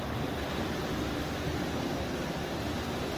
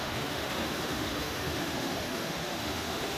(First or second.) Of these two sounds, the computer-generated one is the second